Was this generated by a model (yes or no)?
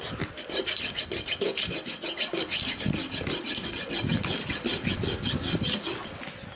no